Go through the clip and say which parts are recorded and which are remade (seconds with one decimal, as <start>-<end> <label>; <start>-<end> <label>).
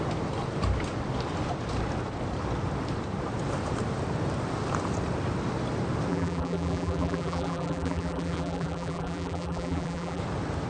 0.0-6.1 recorded; 6.1-10.2 remade; 10.2-10.7 recorded